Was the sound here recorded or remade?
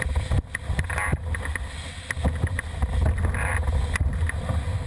recorded